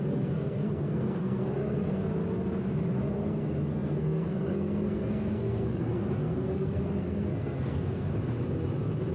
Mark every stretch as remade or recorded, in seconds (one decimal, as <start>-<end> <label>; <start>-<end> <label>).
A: 0.0-2.1 remade; 2.1-3.1 recorded; 3.1-8.1 remade; 8.1-9.1 recorded